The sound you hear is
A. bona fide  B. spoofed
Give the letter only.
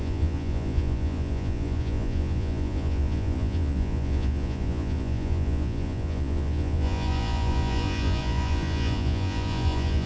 B